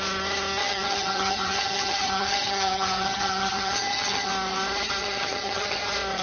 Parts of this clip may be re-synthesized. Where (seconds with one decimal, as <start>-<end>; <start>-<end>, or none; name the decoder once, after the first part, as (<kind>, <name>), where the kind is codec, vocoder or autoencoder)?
0.6-4.3 (vocoder, HiFi-GAN); 5.0-5.8